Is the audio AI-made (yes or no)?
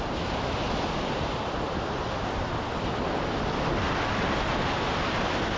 no